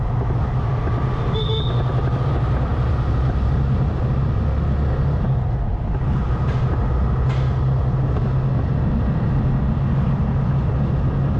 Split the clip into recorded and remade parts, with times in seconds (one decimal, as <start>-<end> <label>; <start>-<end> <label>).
0.0-11.4 recorded